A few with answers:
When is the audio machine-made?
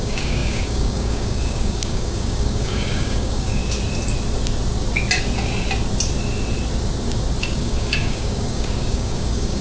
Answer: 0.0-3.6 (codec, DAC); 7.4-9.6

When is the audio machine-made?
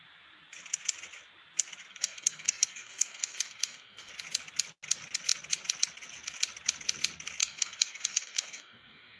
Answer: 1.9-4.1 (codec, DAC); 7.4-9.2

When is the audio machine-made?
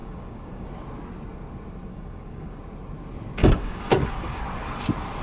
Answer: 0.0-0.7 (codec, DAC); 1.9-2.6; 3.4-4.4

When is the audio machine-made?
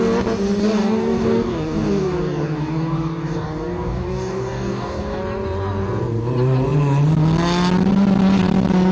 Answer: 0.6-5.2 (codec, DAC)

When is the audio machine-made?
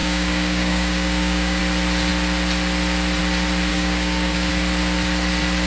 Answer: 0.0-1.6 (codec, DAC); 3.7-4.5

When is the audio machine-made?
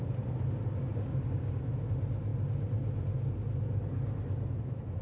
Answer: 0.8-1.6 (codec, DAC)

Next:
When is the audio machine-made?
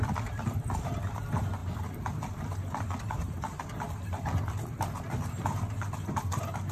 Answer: none